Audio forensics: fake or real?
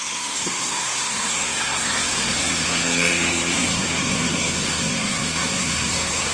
fake